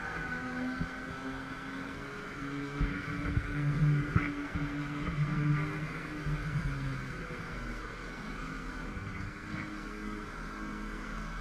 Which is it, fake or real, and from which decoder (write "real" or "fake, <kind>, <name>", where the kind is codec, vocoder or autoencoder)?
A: fake, codec, SNAC